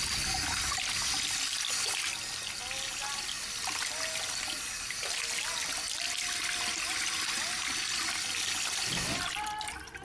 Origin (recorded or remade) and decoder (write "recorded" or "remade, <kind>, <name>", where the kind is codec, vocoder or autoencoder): recorded